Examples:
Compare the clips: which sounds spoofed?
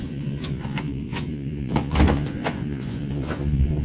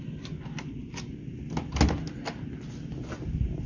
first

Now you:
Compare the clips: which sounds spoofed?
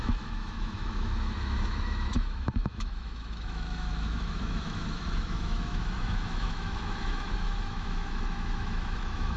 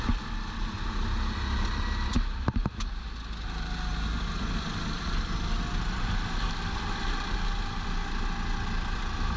first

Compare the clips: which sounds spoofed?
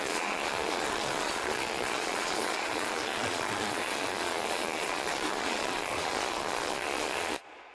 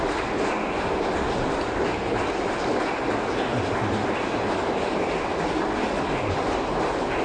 first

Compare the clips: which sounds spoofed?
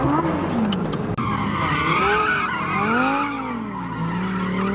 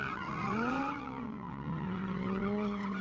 second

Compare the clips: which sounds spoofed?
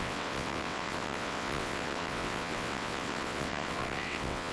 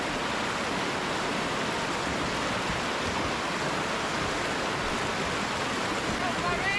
first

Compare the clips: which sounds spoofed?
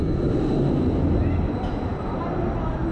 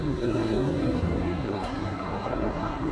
second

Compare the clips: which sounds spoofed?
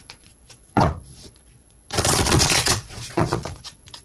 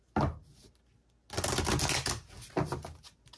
first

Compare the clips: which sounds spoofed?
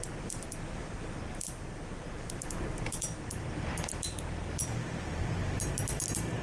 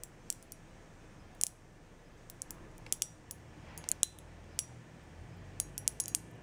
first